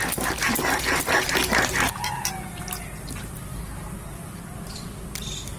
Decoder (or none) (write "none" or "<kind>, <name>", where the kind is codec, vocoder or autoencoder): none